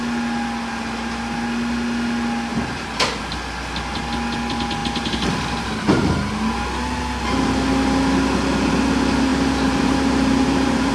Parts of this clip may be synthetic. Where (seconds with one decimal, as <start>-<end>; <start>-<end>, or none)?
9.3-10.9